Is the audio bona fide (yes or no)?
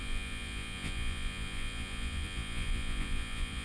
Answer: no